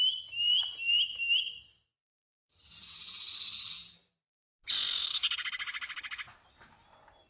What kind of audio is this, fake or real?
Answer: real